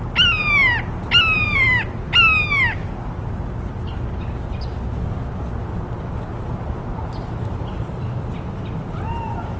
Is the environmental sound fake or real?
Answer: real